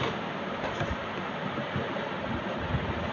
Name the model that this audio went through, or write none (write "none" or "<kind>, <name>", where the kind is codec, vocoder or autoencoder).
none